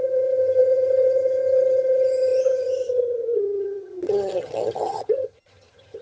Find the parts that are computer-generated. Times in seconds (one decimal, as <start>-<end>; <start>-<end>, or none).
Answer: 0.0-6.0